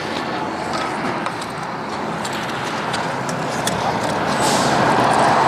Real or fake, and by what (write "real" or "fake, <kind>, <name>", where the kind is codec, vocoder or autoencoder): real